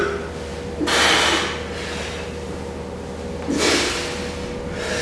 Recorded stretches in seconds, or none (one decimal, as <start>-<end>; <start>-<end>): 0.0-5.0